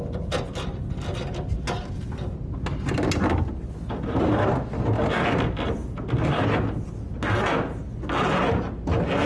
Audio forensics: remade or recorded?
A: recorded